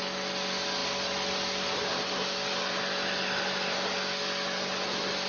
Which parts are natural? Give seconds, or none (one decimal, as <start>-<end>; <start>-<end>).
0.0-5.3